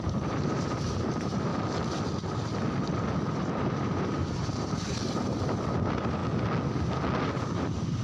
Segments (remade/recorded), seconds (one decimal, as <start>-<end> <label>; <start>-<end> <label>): 0.0-1.5 remade; 1.5-3.3 recorded; 3.3-6.2 remade; 6.2-8.0 recorded